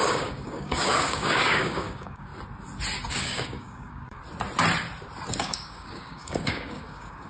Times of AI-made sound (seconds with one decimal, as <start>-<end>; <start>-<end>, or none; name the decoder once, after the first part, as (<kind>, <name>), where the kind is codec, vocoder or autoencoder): 0.0-2.3 (codec, DAC); 3.1-4.2; 5.4-7.3

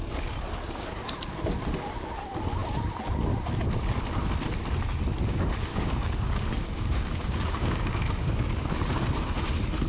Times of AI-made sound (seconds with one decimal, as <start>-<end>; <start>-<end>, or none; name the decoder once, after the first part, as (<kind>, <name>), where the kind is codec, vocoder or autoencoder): 5.7-8.7 (codec, DAC)

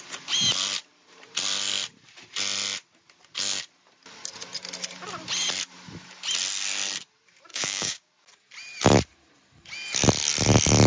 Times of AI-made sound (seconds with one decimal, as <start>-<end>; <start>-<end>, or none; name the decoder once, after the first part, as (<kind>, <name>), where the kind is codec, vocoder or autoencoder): 7.5-8.1 (codec, DAC)

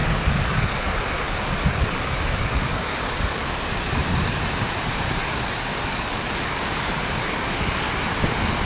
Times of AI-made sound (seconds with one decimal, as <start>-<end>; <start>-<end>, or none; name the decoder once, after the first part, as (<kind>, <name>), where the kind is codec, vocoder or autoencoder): 0.0-3.6 (codec, DAC); 5.2-7.9

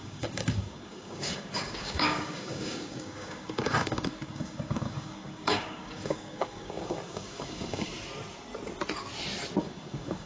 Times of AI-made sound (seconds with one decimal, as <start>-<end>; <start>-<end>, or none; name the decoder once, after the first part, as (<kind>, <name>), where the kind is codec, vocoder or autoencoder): 0.0-7.9 (codec, DAC); 9.6-10.3

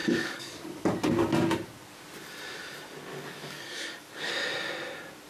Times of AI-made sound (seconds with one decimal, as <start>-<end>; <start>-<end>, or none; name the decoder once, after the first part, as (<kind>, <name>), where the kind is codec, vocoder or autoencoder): 0.0-1.3 (codec, DAC); 3.1-4.3

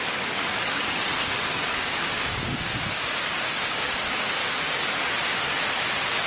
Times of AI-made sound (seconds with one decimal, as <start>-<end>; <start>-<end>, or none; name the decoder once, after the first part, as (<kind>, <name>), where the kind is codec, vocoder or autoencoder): 0.0-4.4 (codec, DAC)

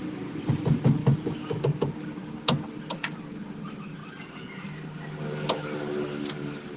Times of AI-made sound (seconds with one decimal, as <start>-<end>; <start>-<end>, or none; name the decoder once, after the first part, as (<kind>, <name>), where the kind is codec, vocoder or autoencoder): 1.0-1.6 (codec, DAC)